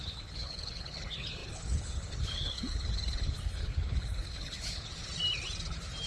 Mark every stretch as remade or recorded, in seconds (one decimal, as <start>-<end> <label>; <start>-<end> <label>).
0.0-4.9 remade; 4.9-6.1 recorded